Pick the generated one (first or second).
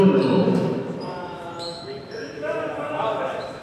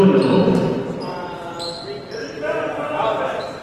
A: first